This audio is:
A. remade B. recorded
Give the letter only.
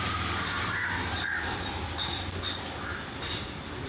B